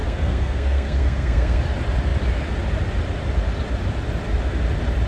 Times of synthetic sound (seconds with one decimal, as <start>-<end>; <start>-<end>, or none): 0.0-1.6